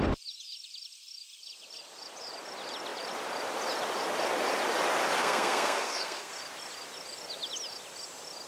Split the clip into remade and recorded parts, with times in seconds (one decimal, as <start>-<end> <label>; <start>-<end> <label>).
0.0-5.2 recorded; 5.2-6.3 remade; 6.3-8.5 recorded